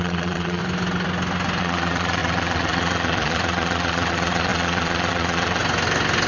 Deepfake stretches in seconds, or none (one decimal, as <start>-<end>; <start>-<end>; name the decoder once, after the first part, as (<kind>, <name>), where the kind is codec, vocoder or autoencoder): 0.0-0.6 (vocoder, Vocos); 1.6-5.6

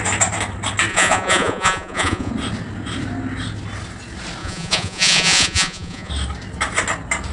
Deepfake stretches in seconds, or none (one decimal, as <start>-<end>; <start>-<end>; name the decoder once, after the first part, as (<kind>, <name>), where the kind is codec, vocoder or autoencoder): 0.9-2.3 (vocoder, Vocos); 4.4-6.1

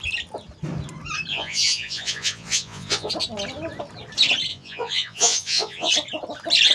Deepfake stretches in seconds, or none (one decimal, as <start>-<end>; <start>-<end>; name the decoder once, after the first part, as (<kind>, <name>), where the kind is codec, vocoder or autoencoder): 1.3-3.1 (vocoder, Vocos); 4.5-5.9

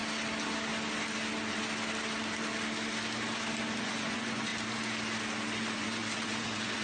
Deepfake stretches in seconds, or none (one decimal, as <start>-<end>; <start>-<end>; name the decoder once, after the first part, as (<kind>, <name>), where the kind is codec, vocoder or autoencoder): 3.8-4.5 (vocoder, Vocos); 5.7-6.8

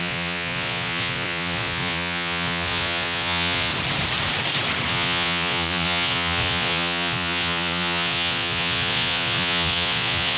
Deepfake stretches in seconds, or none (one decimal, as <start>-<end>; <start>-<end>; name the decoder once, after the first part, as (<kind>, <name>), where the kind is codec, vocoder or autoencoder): 0.0-3.7 (vocoder, Vocos); 4.9-10.4

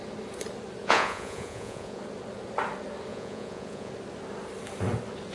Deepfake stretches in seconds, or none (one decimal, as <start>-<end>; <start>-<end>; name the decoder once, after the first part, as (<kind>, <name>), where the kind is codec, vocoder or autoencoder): 0.8-2.0 (vocoder, Vocos); 3.1-3.9

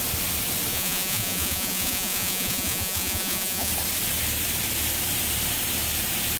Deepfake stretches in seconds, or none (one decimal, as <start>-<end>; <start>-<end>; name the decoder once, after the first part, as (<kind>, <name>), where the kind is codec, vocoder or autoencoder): 0.7-3.7 (vocoder, Vocos)